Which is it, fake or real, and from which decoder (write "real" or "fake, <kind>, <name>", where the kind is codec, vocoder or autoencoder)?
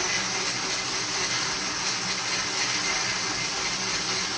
real